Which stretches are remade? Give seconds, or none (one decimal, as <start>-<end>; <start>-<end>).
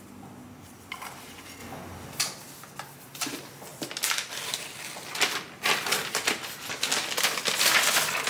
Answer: none